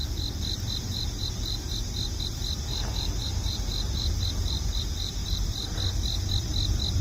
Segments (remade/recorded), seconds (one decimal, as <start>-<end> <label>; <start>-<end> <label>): 0.0-5.2 recorded; 5.2-5.7 remade; 5.7-7.0 recorded